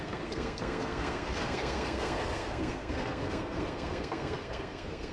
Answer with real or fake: fake